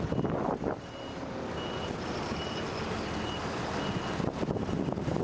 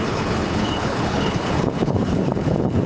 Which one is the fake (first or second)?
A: second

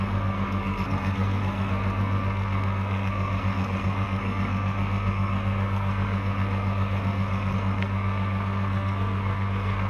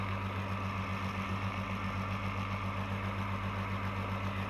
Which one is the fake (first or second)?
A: first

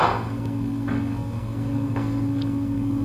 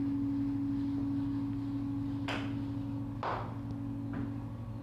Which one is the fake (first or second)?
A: first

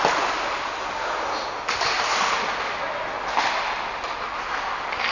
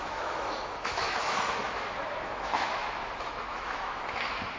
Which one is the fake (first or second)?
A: second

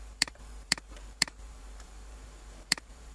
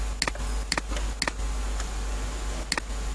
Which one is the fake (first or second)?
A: first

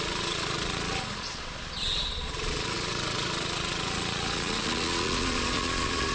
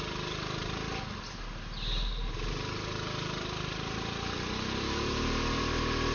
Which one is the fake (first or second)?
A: first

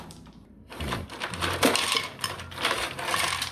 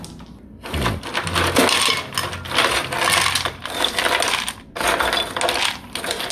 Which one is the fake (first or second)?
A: first